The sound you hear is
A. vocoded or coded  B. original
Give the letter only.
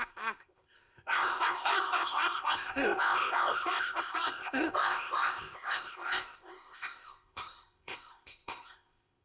A